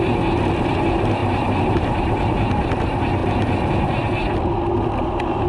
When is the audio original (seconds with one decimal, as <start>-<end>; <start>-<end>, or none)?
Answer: 0.0-1.2; 2.7-5.5